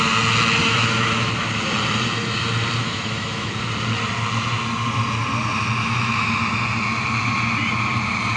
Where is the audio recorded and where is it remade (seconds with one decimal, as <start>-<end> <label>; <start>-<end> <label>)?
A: 0.0-0.6 recorded; 0.6-1.3 remade; 1.3-2.8 recorded; 2.8-3.5 remade; 3.5-5.8 recorded; 5.8-6.4 remade; 6.4-8.4 recorded